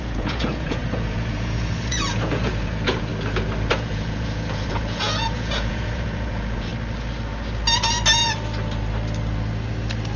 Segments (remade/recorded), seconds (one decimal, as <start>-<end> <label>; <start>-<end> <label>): 0.0-3.1 remade; 3.1-3.7 recorded; 3.7-6.7 remade; 6.7-10.2 recorded